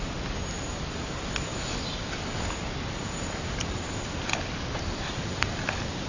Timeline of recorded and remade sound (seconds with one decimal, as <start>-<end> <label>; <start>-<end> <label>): 0.0-6.1 recorded